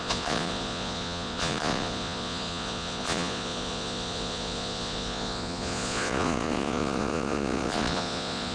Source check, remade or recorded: remade